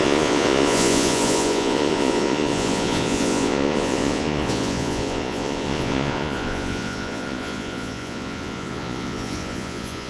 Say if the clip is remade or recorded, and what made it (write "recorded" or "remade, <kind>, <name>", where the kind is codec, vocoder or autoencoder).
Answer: remade, vocoder, Vocos